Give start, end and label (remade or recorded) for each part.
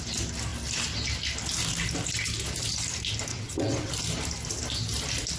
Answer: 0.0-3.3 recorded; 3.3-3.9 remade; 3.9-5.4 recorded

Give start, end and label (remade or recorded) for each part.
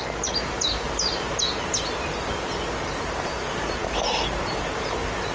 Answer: 0.0-5.3 recorded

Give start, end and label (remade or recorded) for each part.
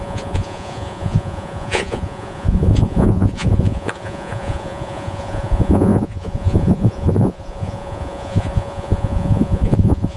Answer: 0.0-10.2 remade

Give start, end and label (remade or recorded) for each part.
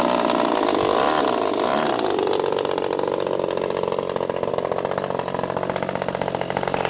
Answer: 0.0-6.9 recorded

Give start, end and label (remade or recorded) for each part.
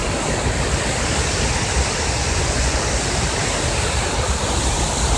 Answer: 0.0-2.2 recorded; 2.2-2.8 remade; 2.8-5.2 recorded